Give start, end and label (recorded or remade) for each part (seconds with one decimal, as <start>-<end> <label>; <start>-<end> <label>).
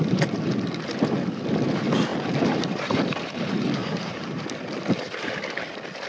0.0-2.1 recorded; 2.1-3.2 remade; 3.2-3.8 recorded; 3.8-4.4 remade; 4.4-6.1 recorded